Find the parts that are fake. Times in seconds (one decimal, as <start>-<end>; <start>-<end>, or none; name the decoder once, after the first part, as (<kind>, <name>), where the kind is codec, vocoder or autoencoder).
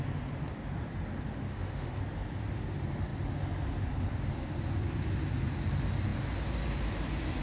1.5-2.0 (autoencoder, DAC-VAE)